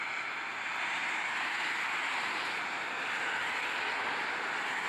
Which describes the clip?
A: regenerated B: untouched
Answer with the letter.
B